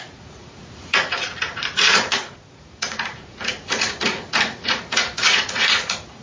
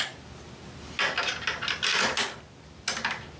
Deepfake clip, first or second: first